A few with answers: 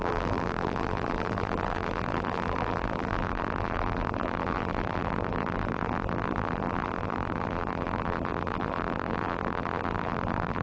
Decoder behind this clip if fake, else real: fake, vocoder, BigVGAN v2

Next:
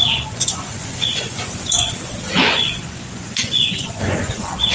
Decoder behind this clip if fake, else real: fake, vocoder, Vocos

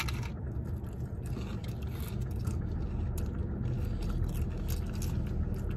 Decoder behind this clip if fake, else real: real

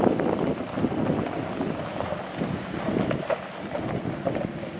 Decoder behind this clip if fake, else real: real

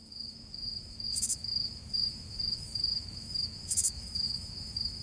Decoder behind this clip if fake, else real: fake, autoencoder, DAC-VAE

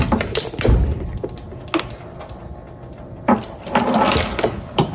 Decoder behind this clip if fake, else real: real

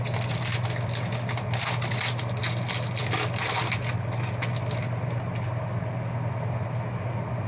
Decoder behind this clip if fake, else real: real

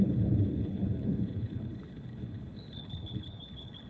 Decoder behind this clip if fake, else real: fake, codec, HILCodec